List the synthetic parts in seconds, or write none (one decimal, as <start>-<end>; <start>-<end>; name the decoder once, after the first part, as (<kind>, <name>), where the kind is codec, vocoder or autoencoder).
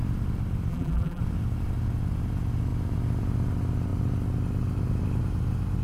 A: 0.7-1.2 (vocoder, BigVGAN v2)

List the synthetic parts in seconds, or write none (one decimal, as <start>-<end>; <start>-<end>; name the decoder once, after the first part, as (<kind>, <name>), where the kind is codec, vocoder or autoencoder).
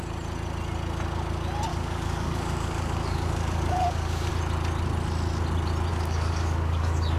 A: 1.7-4.3 (codec, DAC); 5.9-7.2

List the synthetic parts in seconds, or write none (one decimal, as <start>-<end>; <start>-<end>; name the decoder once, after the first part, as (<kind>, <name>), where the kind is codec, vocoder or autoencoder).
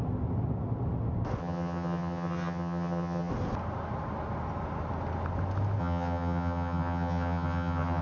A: 1.4-3.3 (vocoder, HiFi-GAN); 5.8-8.0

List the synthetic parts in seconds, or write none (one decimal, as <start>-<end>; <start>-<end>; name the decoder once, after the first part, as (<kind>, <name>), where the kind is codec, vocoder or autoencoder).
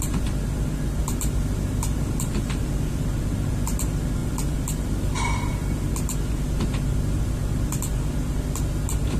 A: 1.0-3.1 (vocoder, BigVGAN v2); 4.2-5.9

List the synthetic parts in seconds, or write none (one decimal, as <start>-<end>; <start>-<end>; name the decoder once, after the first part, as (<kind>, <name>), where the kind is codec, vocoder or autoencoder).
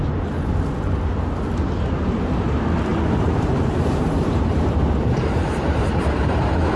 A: 2.9-6.8 (vocoder, BigVGAN v2)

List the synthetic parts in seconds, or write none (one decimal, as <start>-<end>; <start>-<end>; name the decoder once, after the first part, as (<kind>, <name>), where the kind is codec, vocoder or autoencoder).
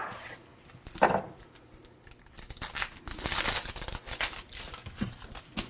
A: none